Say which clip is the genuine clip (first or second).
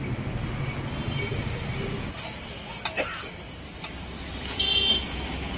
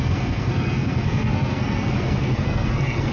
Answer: first